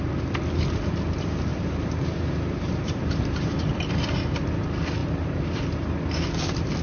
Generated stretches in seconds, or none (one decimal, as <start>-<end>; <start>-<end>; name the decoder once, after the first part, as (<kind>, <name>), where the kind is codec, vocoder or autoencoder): 1.5-3.8 (vocoder, BigVGAN v2); 5.0-5.6